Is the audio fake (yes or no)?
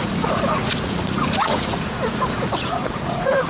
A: yes